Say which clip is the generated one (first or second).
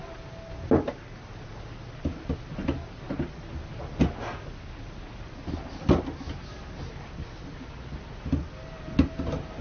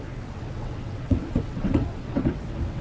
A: second